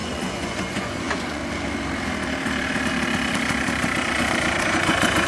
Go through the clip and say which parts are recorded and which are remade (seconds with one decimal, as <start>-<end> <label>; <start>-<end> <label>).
0.0-1.4 remade; 1.4-4.6 recorded; 4.6-5.3 remade